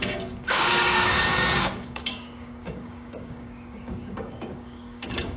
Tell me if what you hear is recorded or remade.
remade